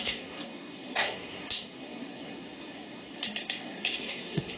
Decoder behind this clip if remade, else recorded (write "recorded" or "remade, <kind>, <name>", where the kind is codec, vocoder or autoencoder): remade, codec, SNAC